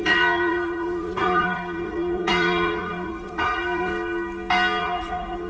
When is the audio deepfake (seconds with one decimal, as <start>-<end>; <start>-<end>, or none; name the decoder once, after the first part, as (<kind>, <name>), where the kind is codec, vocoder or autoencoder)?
0.0-3.9 (vocoder, Vocos); 4.8-5.5